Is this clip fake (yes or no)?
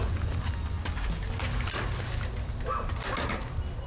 no